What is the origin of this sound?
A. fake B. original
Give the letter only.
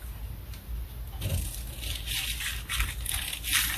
B